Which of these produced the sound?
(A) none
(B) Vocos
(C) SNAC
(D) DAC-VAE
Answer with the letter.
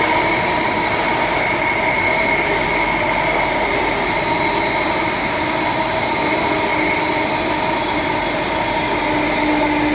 A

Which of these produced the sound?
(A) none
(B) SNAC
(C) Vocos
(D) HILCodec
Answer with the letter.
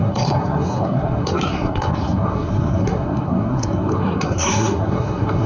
B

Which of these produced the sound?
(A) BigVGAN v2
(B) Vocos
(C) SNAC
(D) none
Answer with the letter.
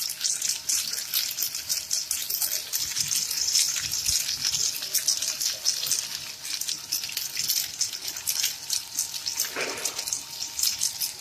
D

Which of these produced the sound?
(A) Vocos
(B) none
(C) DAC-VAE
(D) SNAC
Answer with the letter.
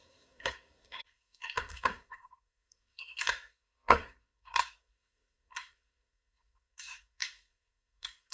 D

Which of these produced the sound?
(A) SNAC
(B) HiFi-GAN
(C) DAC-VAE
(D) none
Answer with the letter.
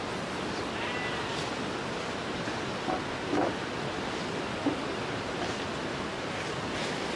D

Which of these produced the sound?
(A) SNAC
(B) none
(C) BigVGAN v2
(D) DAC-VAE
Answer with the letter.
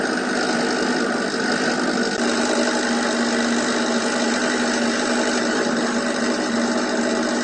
B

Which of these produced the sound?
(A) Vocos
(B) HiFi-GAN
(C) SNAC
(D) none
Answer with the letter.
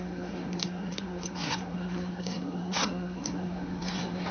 C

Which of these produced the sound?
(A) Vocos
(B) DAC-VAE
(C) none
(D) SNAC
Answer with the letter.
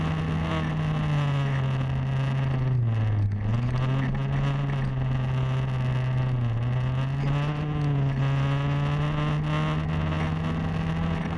C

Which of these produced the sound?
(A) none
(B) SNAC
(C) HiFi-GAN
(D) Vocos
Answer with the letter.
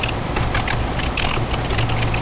A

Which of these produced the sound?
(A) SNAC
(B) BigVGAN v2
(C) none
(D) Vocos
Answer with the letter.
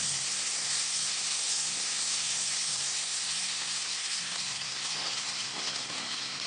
A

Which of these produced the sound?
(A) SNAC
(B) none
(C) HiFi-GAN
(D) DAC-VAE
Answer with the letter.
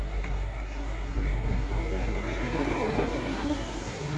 A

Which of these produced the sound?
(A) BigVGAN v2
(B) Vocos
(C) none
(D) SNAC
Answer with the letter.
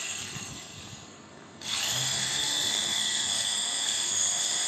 D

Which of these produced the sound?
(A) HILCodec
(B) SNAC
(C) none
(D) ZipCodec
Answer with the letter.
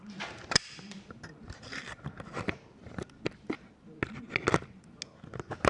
C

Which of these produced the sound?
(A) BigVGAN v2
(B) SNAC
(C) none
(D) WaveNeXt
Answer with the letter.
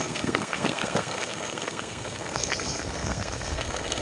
B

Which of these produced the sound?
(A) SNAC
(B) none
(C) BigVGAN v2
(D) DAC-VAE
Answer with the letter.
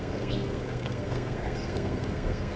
A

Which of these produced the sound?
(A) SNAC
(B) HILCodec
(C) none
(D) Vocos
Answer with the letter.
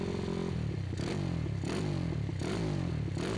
C